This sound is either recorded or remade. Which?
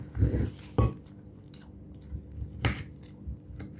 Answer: recorded